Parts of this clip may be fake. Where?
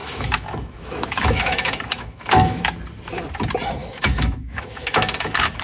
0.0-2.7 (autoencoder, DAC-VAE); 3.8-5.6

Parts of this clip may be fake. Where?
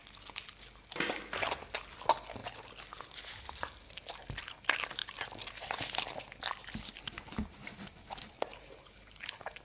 none